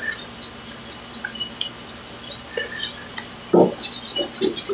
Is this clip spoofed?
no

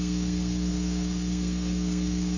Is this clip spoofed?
yes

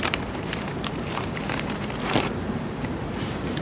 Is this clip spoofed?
yes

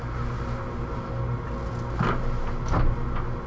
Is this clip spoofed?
no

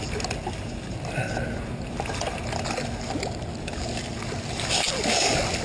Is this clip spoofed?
no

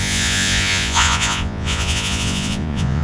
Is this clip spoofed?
yes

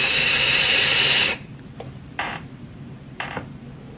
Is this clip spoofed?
yes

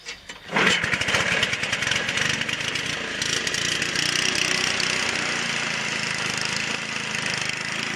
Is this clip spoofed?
no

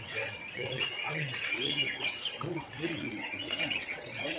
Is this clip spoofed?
yes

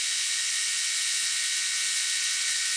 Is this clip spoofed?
yes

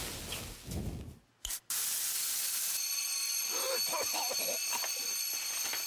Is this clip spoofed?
no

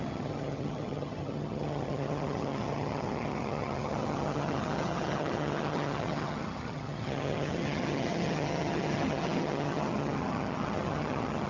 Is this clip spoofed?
yes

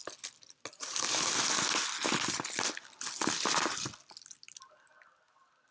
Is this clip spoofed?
no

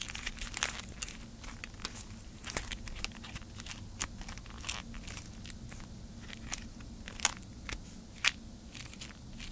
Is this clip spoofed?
no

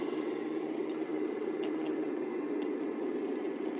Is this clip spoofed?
yes